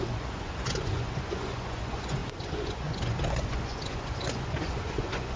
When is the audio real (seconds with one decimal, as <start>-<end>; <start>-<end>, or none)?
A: none